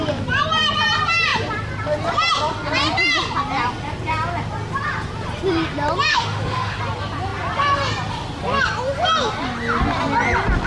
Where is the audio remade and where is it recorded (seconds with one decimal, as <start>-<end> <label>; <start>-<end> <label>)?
0.0-6.1 recorded; 6.1-6.8 remade; 6.8-10.7 recorded